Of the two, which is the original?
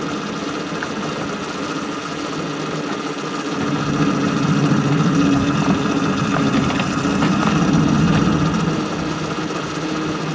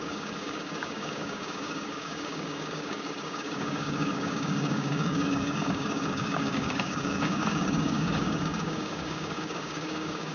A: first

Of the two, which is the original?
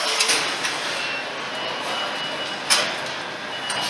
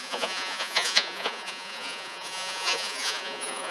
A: first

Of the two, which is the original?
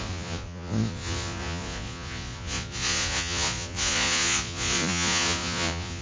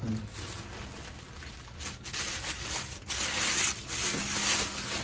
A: second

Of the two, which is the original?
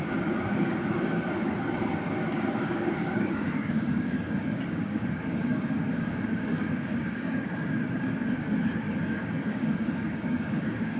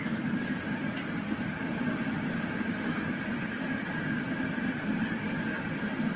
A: second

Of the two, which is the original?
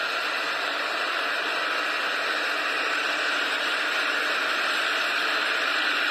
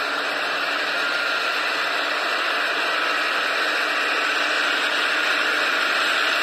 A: second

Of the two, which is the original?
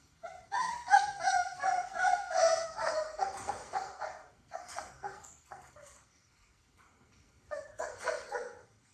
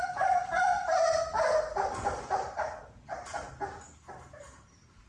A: second